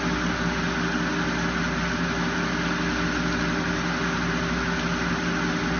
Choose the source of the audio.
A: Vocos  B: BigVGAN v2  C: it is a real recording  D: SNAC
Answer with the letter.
C